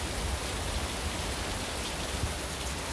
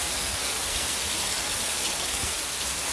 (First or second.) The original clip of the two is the first